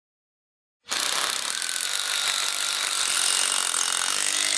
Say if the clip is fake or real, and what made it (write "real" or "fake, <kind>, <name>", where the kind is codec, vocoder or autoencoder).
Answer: real